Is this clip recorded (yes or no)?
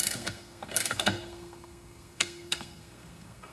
no